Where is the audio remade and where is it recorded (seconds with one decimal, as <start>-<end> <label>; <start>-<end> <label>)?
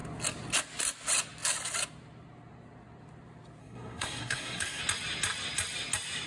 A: 0.0-3.6 recorded; 3.6-4.8 remade; 4.8-6.3 recorded